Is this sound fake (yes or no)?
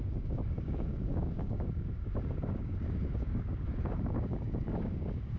yes